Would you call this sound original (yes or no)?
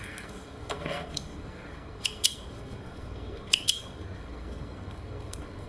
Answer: no